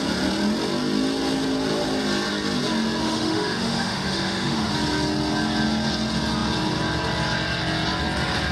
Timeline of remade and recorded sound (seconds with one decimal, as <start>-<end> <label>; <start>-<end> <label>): 0.0-3.0 recorded; 3.0-4.7 remade; 4.7-8.5 recorded